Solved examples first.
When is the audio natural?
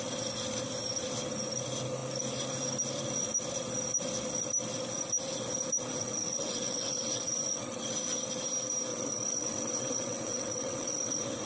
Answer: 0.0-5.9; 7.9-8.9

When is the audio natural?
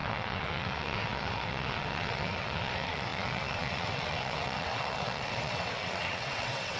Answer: none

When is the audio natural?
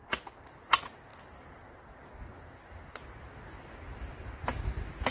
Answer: 0.0-5.1